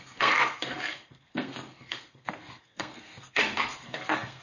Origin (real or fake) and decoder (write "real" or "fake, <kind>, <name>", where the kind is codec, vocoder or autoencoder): fake, codec, SNAC